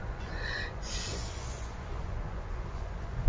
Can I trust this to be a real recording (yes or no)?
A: no